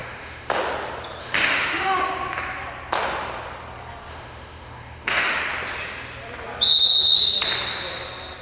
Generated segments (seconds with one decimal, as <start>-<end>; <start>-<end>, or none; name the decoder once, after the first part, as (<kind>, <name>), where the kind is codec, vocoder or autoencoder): 0.0-0.6 (autoencoder, DAC-VAE); 1.2-2.0; 4.1-5.4